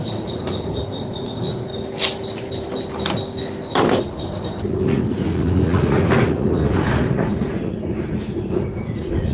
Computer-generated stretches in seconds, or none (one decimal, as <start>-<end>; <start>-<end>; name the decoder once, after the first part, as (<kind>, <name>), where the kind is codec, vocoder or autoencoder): 0.0-1.7 (vocoder, Vocos); 4.0-9.3